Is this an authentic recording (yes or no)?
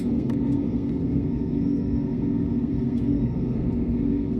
no